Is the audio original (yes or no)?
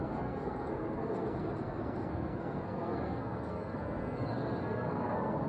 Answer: no